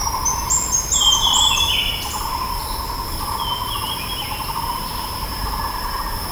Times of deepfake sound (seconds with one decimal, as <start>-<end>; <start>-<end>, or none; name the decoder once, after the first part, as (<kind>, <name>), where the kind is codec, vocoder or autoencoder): 0.9-2.6 (vocoder, BigVGAN v2); 4.0-6.3

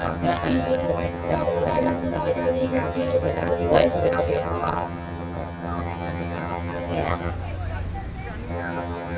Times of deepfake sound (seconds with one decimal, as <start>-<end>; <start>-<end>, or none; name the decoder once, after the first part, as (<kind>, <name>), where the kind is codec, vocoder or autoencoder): 0.0-7.3 (vocoder, HiFi-GAN); 8.5-9.2